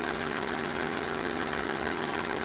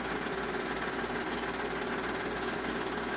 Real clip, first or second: second